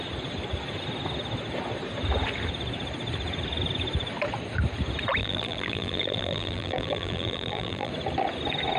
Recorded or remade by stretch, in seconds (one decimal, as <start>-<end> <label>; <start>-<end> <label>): 0.0-5.2 recorded; 5.2-7.9 remade; 7.9-8.8 recorded